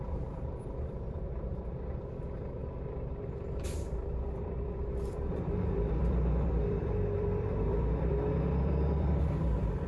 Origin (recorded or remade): remade